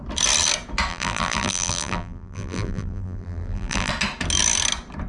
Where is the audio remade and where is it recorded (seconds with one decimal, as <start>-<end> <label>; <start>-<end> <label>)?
0.0-0.9 recorded; 0.9-3.9 remade; 3.9-5.1 recorded